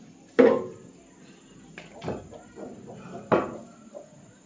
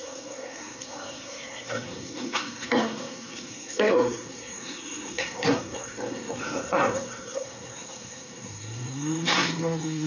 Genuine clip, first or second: first